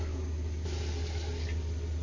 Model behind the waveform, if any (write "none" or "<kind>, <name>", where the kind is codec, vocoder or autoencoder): none